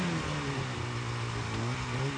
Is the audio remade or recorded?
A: recorded